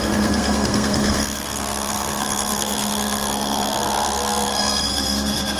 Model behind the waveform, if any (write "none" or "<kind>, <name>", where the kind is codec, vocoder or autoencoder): codec, SNAC